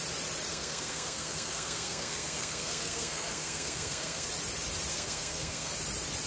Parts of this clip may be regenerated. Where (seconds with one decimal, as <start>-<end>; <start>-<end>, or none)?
0.5-4.3; 4.9-5.7